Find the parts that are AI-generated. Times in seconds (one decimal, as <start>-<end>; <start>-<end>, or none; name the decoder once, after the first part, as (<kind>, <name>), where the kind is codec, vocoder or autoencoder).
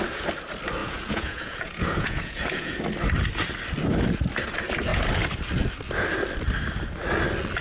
0.8-2.8 (vocoder, Vocos)